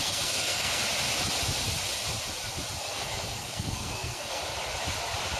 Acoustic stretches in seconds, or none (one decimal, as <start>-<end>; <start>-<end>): 0.8-2.8; 4.4-5.4